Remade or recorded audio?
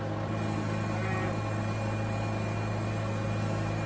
recorded